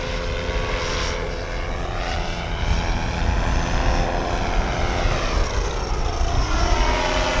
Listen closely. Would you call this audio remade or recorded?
recorded